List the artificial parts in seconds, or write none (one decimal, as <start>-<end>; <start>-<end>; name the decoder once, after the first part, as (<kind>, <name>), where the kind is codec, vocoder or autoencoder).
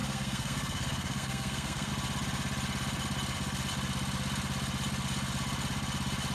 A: 0.0-1.9 (codec, SNAC)